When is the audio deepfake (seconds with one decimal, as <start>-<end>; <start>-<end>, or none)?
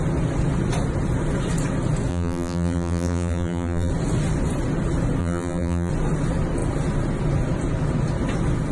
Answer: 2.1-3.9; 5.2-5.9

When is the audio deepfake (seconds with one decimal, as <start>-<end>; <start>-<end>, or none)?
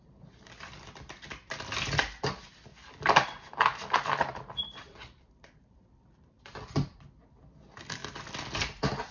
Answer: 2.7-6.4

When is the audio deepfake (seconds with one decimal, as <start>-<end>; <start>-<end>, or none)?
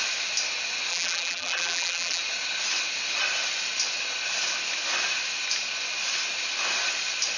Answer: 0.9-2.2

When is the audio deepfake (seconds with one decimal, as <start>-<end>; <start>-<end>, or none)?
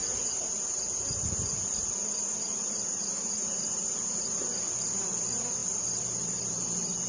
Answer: 0.0-7.1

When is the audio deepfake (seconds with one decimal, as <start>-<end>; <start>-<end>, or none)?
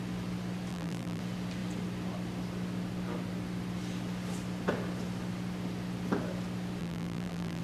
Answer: 0.7-1.2; 6.8-7.6